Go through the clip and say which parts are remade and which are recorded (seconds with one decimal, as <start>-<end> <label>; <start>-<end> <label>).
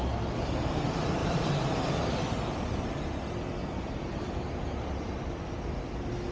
0.0-1.2 recorded; 1.2-1.9 remade; 1.9-3.6 recorded; 3.6-5.1 remade; 5.1-6.3 recorded